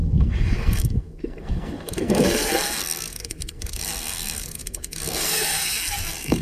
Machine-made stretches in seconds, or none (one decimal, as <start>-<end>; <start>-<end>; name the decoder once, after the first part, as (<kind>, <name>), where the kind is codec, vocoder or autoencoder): 0.0-6.4 (codec, SNAC)